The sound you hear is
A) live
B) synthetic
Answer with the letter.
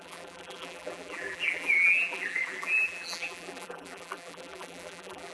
B